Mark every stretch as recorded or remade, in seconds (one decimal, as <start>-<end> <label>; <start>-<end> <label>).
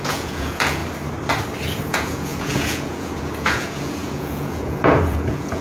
0.0-0.8 remade; 0.8-1.9 recorded; 1.9-5.6 remade